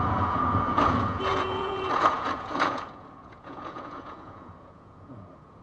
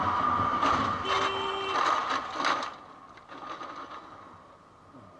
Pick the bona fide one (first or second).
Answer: second